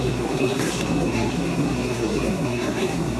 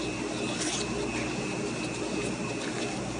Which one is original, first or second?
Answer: second